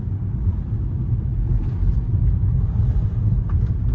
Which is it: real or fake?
real